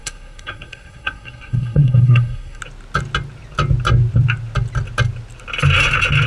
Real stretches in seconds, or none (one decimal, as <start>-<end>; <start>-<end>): 2.6-6.3